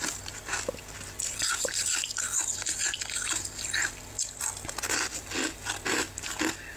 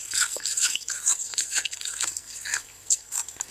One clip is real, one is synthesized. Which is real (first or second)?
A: first